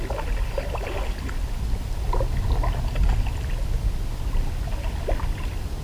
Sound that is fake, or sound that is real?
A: real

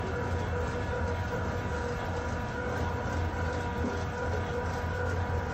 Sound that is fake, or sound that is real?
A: real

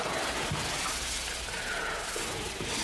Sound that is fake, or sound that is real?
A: real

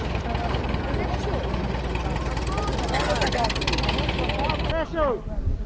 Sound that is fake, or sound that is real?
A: real